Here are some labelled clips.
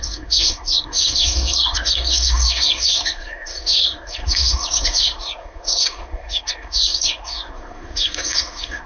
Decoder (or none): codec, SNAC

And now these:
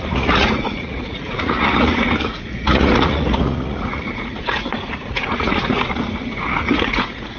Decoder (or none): vocoder, Vocos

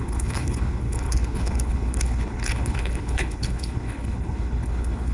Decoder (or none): codec, HILCodec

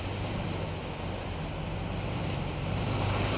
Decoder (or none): none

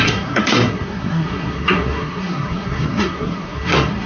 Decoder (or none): codec, SNAC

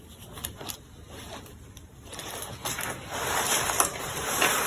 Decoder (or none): none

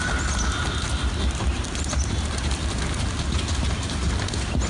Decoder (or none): none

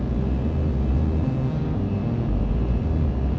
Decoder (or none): none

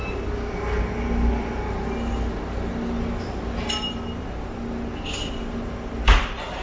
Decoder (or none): none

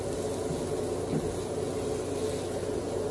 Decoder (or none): none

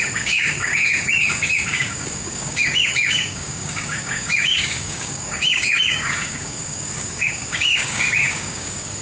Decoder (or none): codec, DAC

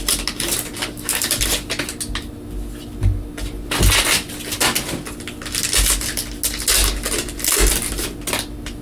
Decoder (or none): none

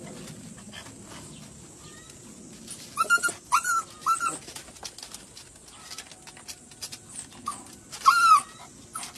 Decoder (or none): none